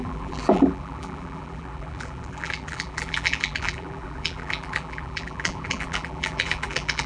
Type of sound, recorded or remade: remade